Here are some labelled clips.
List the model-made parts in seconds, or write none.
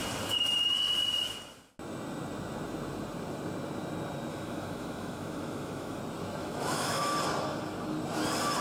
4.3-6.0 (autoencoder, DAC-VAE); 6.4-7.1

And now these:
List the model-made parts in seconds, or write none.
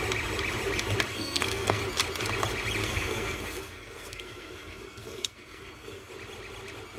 1.1-1.8 (codec, SNAC); 2.8-6.1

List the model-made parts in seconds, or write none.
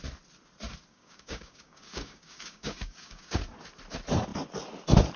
0.9-3.4 (codec, DAC)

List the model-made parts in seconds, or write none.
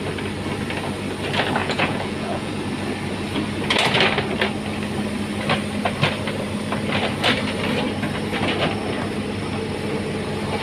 1.6-2.5 (vocoder, Vocos)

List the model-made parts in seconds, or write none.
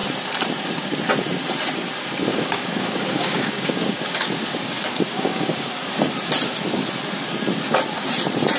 2.3-5.7 (codec, DAC)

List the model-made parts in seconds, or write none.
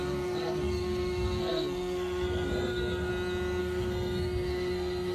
0.0-3.1 (codec, SNAC); 3.6-5.1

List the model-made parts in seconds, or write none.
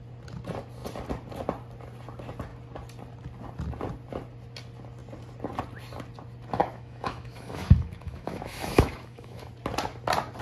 6.6-9.5 (autoencoder, DAC-VAE)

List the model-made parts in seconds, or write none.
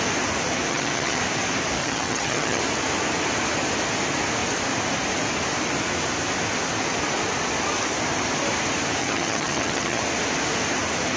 0.7-1.2 (vocoder, HiFi-GAN); 1.8-2.6; 9.0-10.0